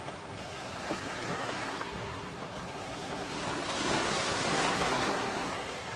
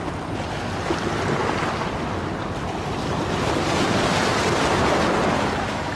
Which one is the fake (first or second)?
first